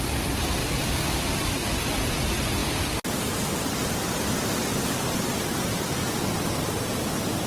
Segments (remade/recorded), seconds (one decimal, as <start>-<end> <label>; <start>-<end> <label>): 0.0-0.6 recorded; 0.6-1.8 remade; 1.8-7.5 recorded